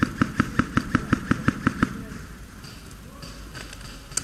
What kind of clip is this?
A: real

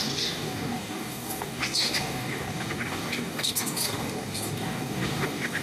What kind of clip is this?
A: fake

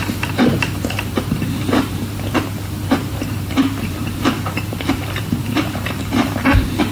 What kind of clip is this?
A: fake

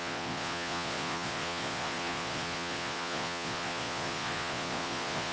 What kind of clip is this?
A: fake